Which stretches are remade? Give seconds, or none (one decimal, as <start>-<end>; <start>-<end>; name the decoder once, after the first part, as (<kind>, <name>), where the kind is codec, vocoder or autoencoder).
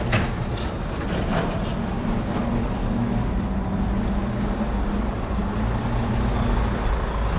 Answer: 1.7-2.4 (vocoder, BigVGAN v2); 2.8-5.3